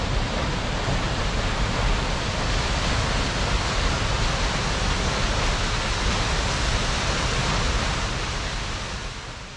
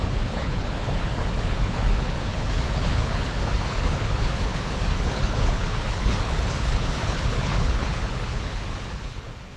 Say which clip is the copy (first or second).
second